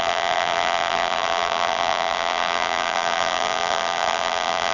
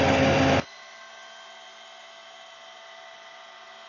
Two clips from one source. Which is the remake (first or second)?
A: first